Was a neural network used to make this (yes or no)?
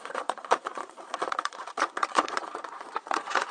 yes